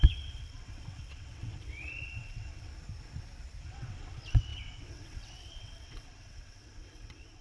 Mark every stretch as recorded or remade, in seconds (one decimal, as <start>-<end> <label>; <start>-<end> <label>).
0.0-2.7 remade; 2.7-3.6 recorded; 3.6-7.4 remade